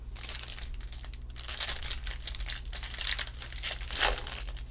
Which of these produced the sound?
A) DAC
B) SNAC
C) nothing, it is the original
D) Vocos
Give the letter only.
C